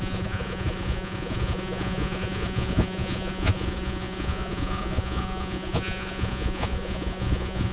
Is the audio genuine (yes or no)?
no